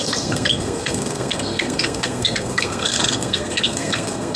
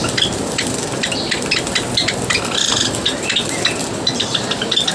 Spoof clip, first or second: first